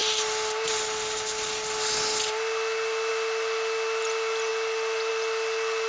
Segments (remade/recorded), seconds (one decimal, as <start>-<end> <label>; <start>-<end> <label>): 0.0-5.9 recorded